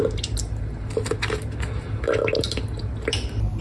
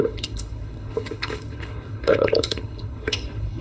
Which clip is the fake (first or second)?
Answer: second